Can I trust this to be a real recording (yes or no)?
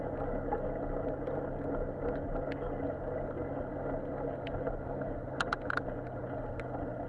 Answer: yes